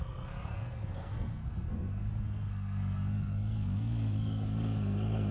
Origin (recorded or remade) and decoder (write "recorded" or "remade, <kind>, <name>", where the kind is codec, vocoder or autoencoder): remade, codec, SNAC